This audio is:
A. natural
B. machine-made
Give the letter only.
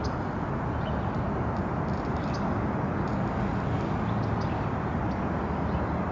A